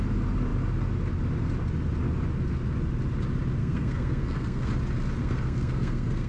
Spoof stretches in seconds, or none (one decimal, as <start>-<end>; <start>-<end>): 3.6-4.7; 5.2-6.3

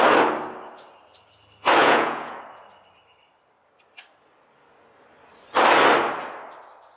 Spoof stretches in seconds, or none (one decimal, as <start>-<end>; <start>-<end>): 1.8-2.4